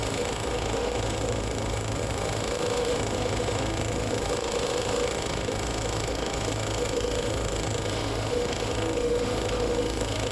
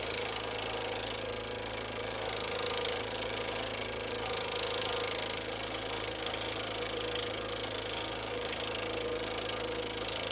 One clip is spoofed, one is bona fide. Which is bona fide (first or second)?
second